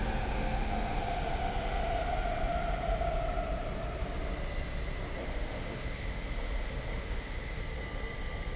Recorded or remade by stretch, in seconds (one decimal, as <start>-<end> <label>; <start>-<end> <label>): 0.0-5.2 recorded; 5.2-7.6 remade; 7.6-8.6 recorded